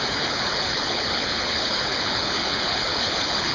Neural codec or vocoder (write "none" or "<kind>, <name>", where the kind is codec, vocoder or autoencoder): codec, HILCodec